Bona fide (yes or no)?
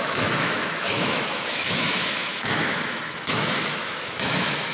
no